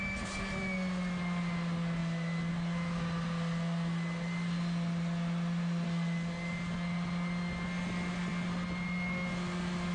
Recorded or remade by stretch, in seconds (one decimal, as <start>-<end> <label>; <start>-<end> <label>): 0.0-9.9 recorded